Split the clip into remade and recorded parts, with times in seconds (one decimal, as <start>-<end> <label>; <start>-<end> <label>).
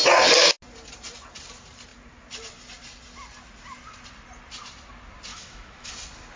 0.0-5.3 recorded; 5.3-5.9 remade; 5.9-6.4 recorded